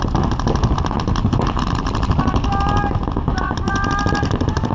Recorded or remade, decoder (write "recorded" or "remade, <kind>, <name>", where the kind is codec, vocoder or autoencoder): recorded